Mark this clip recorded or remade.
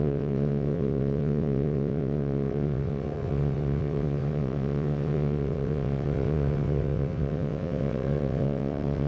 remade